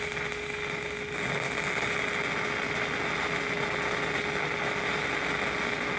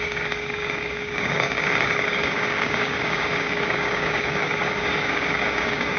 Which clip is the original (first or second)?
first